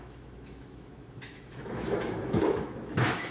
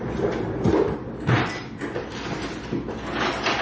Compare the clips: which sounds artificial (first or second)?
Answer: first